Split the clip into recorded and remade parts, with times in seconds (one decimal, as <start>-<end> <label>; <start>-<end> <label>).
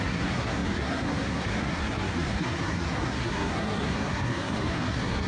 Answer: 0.0-5.3 remade